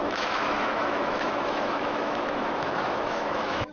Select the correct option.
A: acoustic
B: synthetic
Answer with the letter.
B